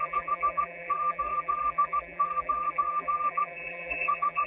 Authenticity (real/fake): fake